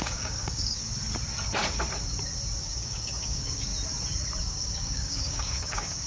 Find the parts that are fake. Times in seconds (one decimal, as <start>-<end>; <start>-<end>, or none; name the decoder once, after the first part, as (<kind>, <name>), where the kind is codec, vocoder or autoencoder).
0.0-0.8 (codec, DAC); 2.6-3.7; 4.4-6.1